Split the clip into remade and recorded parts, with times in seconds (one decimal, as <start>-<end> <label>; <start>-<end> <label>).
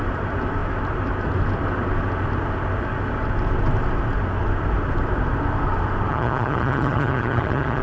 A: 0.0-6.1 recorded; 6.1-7.8 remade